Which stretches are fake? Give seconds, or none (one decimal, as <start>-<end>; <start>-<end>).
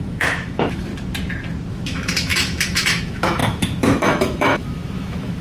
0.0-0.9; 1.7-5.4